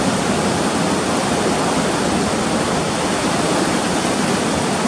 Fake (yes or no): no